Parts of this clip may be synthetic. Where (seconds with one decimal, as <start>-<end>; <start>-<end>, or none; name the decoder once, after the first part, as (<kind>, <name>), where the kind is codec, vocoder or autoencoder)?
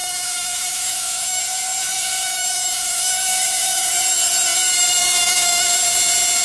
0.0-1.4 (autoencoder, DAC-VAE); 1.8-3.9; 5.0-5.7